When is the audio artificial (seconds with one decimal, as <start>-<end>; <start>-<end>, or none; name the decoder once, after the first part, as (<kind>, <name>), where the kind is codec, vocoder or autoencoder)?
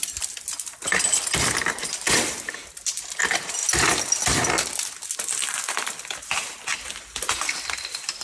none